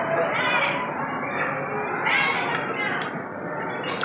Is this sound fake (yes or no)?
no